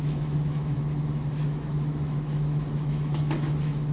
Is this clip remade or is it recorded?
remade